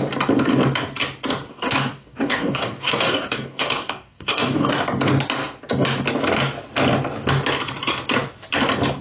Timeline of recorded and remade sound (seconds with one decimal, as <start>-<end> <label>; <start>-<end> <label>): 0.0-1.5 recorded; 1.5-4.7 remade; 4.7-9.0 recorded